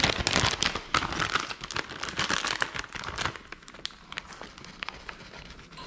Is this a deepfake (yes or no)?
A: no